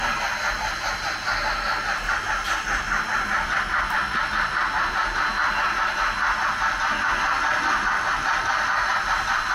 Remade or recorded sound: recorded